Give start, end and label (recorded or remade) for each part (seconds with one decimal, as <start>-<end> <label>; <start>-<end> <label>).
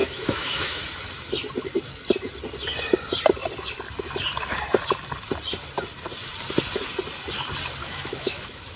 0.0-0.8 remade; 0.8-7.8 recorded; 7.8-8.8 remade